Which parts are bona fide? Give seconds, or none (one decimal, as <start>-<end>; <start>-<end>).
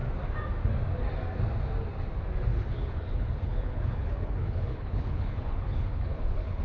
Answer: 0.0-2.5